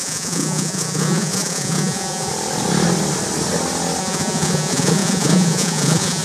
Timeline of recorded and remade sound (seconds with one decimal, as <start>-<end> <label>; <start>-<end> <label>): 0.0-2.3 remade; 2.3-4.0 recorded; 4.0-6.2 remade